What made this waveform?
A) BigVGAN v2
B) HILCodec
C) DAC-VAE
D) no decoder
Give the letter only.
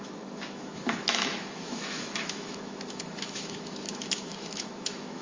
C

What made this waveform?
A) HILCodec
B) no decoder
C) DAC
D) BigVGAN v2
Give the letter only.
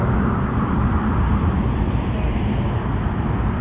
B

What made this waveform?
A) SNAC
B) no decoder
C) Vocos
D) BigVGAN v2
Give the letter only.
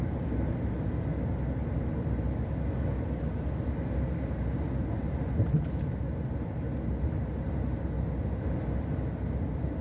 B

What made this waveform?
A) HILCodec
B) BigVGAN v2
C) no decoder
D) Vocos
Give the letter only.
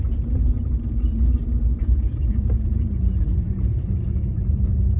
B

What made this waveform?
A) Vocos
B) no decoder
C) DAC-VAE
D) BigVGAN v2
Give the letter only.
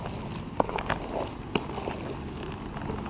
B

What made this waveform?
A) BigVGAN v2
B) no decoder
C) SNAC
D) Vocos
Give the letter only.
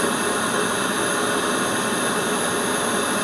B